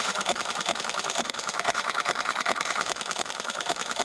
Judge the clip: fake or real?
fake